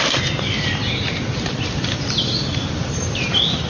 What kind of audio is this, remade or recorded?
recorded